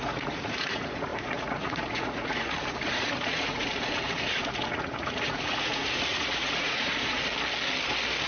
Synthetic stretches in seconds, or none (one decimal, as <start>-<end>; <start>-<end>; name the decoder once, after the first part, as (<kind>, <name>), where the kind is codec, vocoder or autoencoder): 0.0-7.2 (vocoder, Vocos)